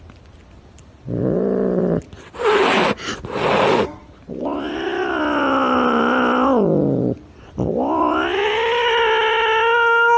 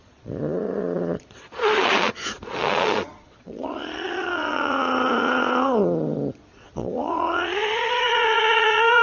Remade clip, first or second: second